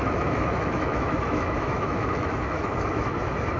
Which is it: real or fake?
fake